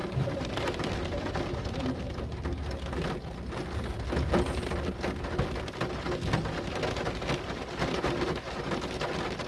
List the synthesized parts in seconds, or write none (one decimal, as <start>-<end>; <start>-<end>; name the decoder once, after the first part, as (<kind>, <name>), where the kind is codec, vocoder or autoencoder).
0.0-0.9 (vocoder, BigVGAN v2)